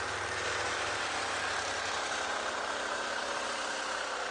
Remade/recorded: recorded